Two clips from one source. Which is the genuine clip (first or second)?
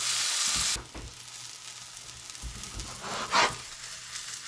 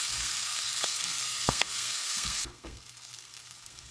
first